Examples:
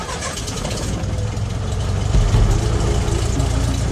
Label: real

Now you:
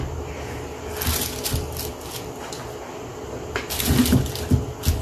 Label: real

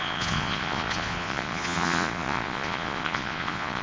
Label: fake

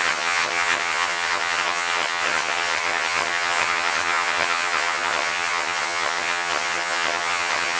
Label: fake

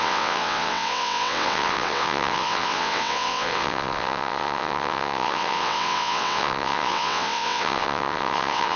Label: fake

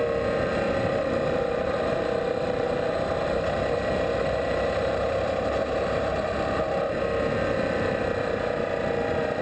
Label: fake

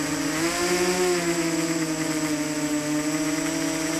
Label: real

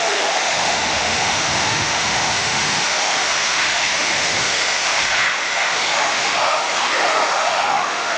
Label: fake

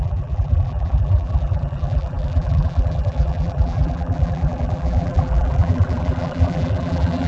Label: fake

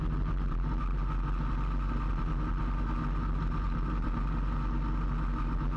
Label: real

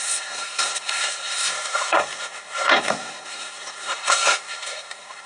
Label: fake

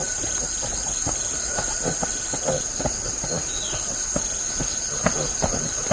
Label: real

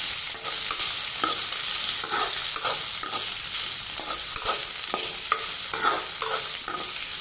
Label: real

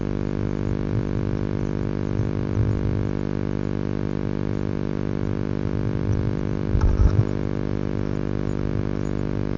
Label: real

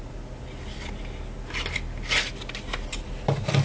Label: real